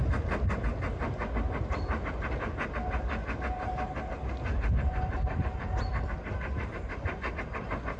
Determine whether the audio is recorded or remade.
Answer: recorded